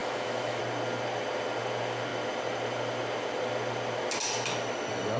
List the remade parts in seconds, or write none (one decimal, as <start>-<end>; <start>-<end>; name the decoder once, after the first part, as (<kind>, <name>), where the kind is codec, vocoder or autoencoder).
0.0-0.6 (autoencoder, DAC-VAE)

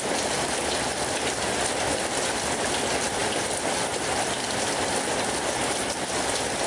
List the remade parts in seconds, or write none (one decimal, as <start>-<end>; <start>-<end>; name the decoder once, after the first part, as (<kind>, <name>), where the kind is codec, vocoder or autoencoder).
none

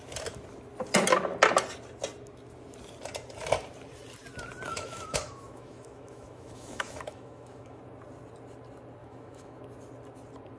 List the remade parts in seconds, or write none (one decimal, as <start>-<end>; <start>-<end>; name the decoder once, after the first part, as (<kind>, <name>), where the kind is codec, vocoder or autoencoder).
4.7-7.8 (autoencoder, DAC-VAE); 9.0-9.6

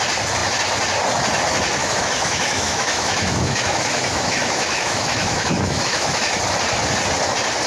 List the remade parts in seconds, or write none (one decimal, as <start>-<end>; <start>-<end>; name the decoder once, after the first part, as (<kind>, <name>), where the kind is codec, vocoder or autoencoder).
1.8-6.4 (autoencoder, DAC-VAE)

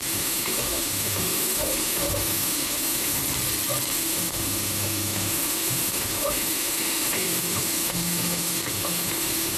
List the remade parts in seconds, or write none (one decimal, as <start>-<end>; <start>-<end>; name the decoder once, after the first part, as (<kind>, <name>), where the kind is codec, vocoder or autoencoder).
0.0-3.2 (autoencoder, DAC-VAE); 3.9-9.6

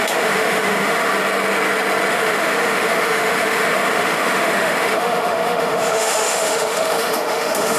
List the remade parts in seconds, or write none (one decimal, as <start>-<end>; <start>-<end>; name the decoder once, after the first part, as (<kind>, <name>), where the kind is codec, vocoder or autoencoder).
0.0-1.1 (autoencoder, DAC-VAE); 2.1-7.8